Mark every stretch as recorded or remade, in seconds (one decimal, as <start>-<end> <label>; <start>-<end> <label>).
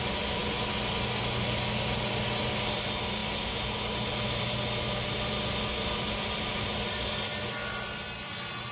0.0-8.7 recorded